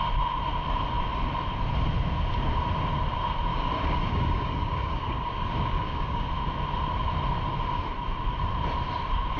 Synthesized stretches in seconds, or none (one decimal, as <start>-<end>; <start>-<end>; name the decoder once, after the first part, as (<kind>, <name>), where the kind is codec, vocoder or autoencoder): 3.5-6.3 (codec, DAC)